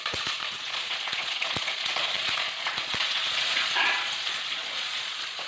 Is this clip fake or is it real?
fake